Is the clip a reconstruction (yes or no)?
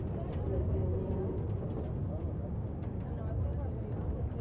no